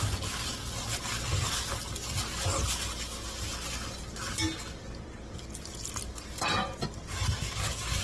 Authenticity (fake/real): real